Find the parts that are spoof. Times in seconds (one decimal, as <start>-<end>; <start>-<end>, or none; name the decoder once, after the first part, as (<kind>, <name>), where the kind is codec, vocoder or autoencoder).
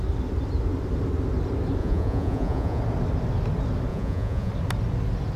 1.8-2.8 (vocoder, Vocos); 3.9-4.5